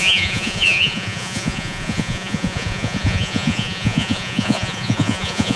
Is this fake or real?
fake